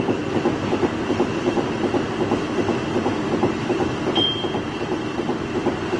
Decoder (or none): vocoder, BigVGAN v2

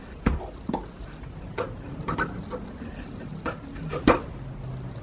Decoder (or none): none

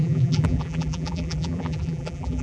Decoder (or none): vocoder, BigVGAN v2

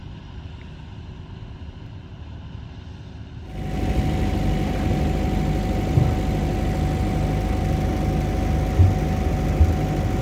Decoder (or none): none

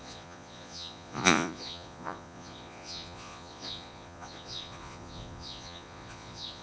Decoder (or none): vocoder, Vocos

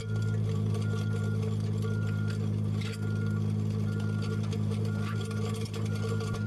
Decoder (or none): none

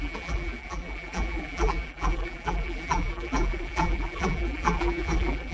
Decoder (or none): vocoder, BigVGAN v2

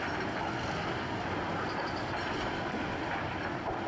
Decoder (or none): none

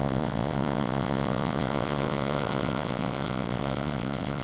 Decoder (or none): vocoder, WaveNeXt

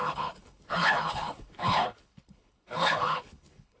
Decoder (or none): codec, HILCodec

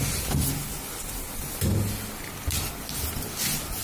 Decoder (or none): none